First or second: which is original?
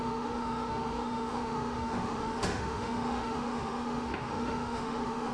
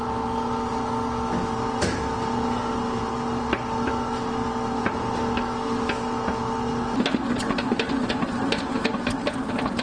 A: second